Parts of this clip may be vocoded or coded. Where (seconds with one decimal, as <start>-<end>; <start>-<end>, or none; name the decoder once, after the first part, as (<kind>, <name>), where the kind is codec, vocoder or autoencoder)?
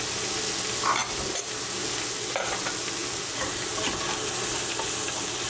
none